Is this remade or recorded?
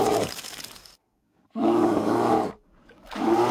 remade